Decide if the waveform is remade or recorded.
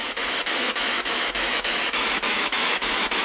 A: remade